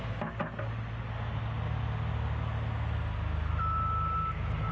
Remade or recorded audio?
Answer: recorded